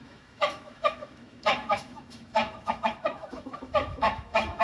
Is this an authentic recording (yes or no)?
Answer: no